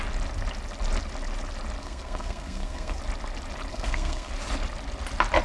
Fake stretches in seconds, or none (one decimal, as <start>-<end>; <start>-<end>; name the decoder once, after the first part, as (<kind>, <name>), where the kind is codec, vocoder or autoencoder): 1.8-3.0 (codec, SNAC); 3.7-4.3